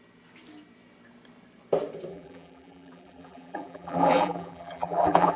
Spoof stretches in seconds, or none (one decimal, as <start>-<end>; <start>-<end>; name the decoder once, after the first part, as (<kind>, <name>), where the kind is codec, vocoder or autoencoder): 2.1-5.4 (vocoder, BigVGAN v2)